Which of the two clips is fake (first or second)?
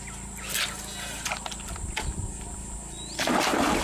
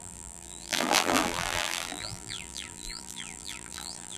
second